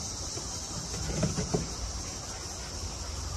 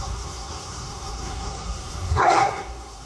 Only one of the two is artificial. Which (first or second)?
second